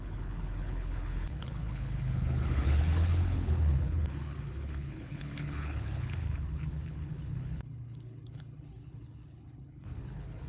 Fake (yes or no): yes